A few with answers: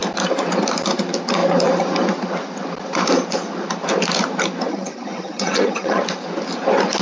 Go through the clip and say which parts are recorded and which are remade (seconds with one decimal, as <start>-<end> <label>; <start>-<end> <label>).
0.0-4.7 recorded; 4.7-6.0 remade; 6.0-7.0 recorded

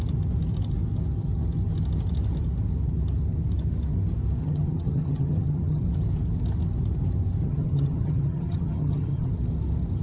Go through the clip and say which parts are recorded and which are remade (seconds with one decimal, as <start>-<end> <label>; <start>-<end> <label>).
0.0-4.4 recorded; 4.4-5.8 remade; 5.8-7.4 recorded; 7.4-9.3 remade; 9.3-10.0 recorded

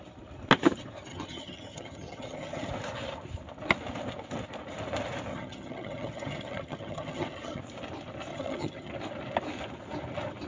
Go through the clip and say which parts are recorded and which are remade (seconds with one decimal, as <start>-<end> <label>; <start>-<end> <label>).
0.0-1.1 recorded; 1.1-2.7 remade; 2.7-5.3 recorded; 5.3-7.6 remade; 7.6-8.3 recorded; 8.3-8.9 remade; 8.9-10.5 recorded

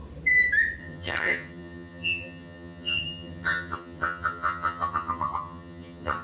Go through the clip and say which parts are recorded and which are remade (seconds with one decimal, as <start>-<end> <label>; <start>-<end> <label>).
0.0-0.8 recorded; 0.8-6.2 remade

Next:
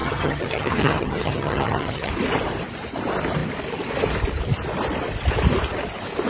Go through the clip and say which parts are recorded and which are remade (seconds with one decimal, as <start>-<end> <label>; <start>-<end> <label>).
0.0-2.1 remade; 2.1-6.3 recorded